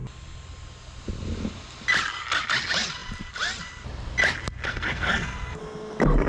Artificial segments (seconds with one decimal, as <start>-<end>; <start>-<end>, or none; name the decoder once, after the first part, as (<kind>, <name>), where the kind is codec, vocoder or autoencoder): 4.7-5.6 (codec, SNAC)